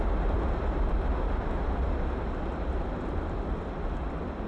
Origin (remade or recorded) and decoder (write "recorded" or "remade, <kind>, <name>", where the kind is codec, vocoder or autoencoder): remade, vocoder, BigVGAN v2